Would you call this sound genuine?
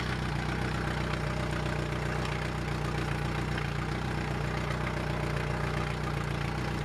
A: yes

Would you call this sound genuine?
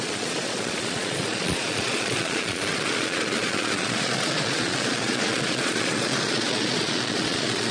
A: no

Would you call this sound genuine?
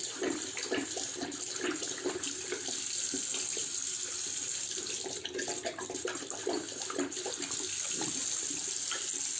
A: yes